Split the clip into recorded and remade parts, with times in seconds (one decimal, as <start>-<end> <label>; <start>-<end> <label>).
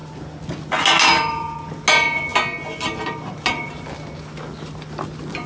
0.0-5.5 recorded